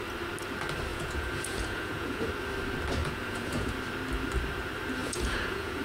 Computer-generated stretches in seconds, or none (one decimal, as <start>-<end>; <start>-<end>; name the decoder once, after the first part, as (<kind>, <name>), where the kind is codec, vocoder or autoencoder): 0.9-2.3 (vocoder, Vocos); 3.0-3.7; 5.0-5.8